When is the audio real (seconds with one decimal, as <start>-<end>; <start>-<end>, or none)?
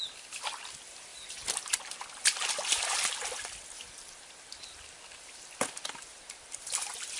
0.0-7.2